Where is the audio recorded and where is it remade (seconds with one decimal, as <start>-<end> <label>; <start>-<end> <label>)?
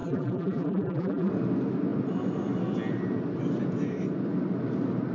0.0-1.3 remade; 1.3-5.1 recorded